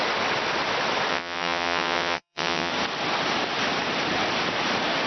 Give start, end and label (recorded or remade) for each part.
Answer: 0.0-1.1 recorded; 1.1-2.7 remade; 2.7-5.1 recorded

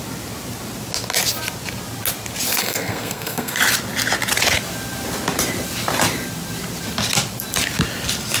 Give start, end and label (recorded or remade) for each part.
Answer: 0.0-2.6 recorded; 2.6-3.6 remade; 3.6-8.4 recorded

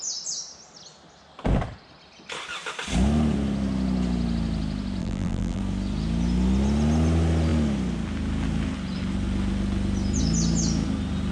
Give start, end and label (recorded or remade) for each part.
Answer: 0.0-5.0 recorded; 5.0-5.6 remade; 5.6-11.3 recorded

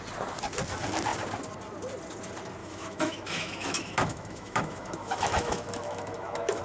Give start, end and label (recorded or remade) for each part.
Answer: 0.0-2.6 recorded; 2.6-6.6 remade